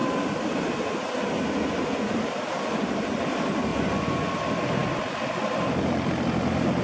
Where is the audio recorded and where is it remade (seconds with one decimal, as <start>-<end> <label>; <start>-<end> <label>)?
0.0-3.7 recorded; 3.7-4.3 remade; 4.3-6.8 recorded